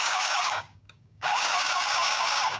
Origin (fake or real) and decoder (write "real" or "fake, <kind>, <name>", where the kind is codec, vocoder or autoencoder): fake, codec, DAC